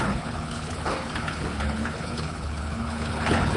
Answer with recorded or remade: remade